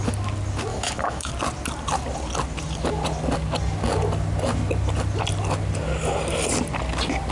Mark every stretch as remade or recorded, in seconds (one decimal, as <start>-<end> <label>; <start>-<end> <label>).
0.0-0.7 recorded; 0.7-1.3 remade; 1.3-7.3 recorded